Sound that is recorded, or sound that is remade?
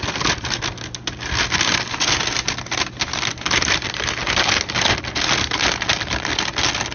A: recorded